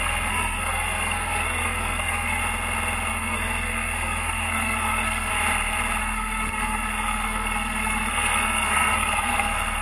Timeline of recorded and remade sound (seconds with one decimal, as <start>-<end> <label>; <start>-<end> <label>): 0.0-2.4 remade; 2.4-3.1 recorded; 3.1-5.3 remade; 5.3-6.0 recorded; 6.0-9.8 remade